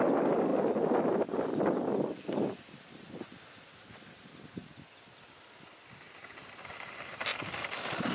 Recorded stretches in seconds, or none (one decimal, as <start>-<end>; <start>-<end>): 0.0-8.1